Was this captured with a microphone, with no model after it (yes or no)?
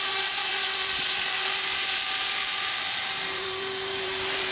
no